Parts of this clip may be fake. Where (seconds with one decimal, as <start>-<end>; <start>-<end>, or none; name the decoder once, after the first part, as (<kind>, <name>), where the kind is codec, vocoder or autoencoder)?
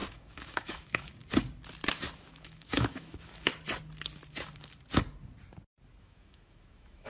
0.0-1.2 (autoencoder, DAC-VAE); 2.3-3.5; 6.0-7.1